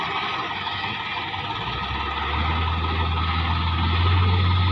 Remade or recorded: recorded